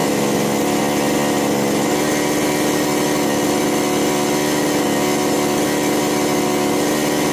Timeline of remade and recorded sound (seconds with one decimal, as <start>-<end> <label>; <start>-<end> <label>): 0.0-7.3 recorded